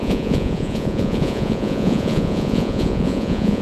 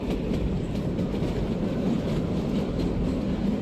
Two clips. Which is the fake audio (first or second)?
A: first